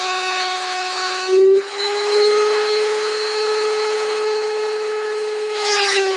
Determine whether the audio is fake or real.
fake